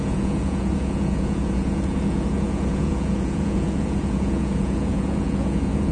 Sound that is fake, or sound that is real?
fake